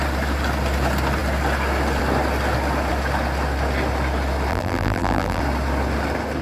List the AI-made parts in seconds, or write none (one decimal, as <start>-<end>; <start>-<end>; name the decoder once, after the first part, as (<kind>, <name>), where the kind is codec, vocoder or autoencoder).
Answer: 4.5-5.4 (vocoder, BigVGAN v2)